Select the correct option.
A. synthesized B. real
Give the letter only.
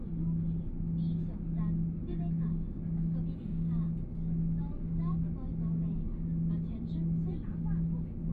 B